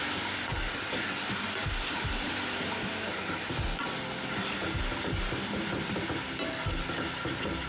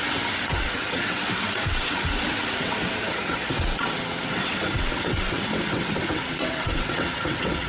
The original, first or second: first